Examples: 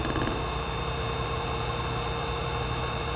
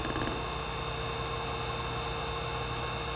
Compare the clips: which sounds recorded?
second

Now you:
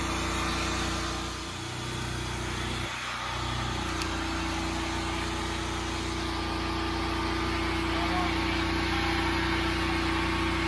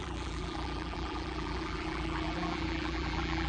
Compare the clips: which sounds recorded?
first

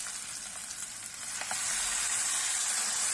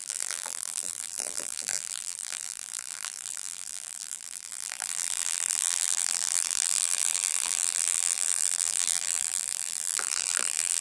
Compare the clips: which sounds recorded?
first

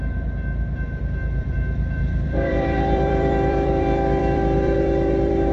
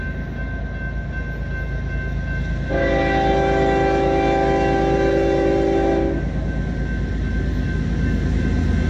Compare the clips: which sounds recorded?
second